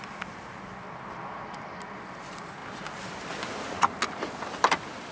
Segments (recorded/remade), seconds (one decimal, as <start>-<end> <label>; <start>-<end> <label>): 0.0-2.6 recorded; 2.6-3.3 remade; 3.3-5.1 recorded